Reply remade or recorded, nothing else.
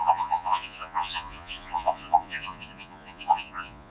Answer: remade